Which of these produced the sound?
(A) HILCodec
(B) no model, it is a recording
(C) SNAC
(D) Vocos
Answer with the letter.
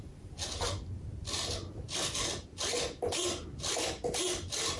B